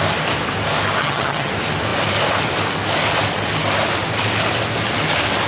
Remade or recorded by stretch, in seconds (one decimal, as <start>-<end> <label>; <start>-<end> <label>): 0.0-1.0 recorded; 1.0-1.5 remade; 1.5-5.5 recorded